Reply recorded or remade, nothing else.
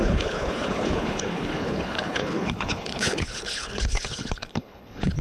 remade